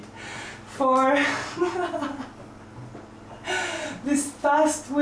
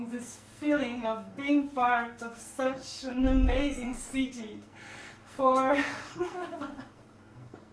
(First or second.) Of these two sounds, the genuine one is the first